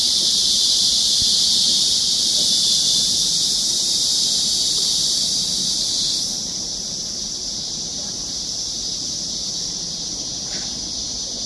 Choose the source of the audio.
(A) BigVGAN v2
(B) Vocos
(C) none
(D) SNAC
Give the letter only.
A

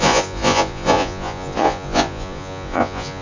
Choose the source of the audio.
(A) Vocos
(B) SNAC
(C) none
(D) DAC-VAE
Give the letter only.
A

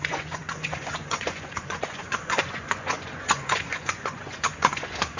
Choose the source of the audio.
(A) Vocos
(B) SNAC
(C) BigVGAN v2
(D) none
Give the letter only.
A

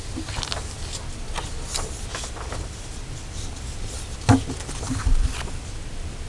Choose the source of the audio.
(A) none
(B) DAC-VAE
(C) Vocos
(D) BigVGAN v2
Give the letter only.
A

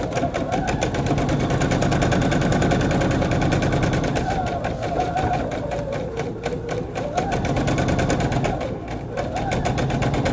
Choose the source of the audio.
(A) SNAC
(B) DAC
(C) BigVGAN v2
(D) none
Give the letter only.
D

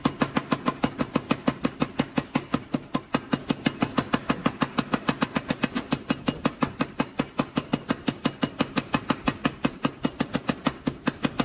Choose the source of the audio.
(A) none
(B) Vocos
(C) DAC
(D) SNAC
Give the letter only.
A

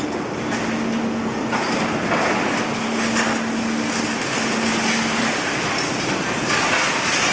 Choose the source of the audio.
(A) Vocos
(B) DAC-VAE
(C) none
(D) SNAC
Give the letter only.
C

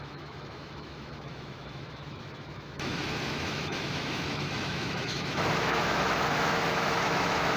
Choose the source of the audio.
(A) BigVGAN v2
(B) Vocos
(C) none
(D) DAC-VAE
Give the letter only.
D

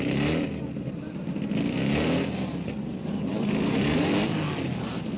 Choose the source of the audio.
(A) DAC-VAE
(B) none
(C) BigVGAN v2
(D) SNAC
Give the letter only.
B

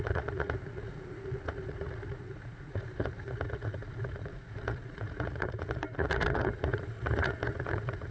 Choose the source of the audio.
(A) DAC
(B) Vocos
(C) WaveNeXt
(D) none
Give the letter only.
B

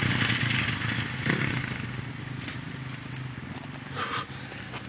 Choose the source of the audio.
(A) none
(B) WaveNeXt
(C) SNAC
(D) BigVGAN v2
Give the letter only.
A